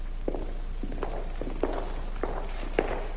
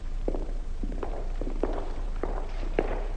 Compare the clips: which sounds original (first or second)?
first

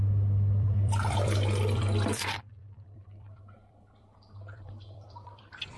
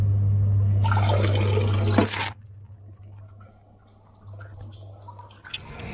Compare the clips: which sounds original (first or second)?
second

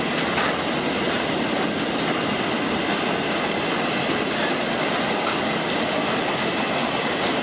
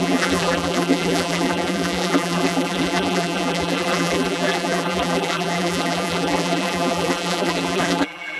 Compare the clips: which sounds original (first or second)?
first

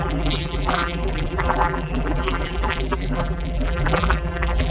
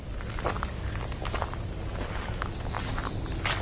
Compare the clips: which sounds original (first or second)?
second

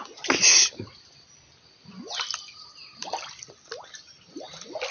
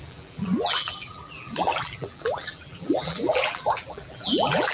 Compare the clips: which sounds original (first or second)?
first